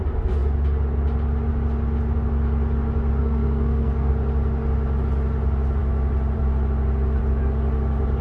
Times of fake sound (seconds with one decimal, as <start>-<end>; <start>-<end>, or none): 3.2-4.1

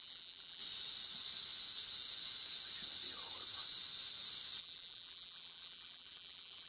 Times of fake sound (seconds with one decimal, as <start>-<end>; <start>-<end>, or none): 0.0-0.6; 4.6-6.7

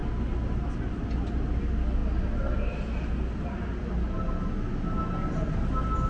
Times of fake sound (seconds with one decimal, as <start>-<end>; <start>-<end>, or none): none